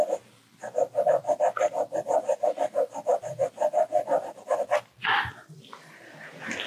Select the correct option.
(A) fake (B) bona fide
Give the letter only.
B